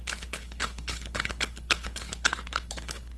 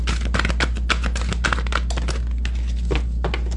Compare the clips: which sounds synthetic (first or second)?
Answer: first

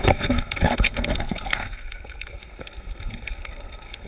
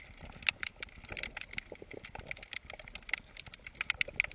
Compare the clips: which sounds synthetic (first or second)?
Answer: first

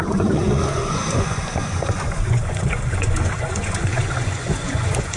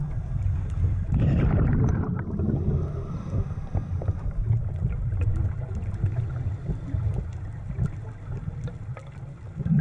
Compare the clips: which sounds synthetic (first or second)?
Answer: first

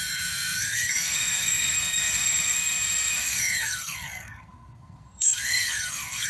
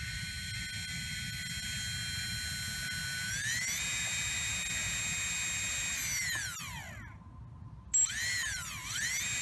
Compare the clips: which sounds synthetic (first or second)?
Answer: first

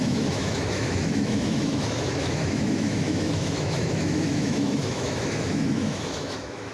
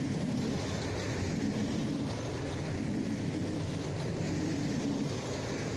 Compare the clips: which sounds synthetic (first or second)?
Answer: first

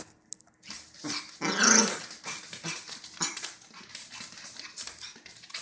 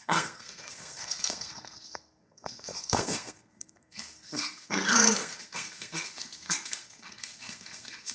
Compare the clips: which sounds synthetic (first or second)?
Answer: second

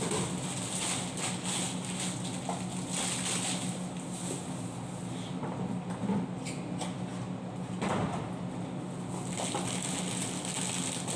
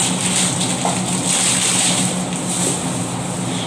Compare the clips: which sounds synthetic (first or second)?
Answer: second